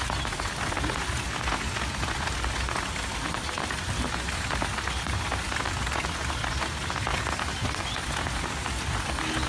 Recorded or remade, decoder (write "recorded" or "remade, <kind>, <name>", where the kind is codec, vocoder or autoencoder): recorded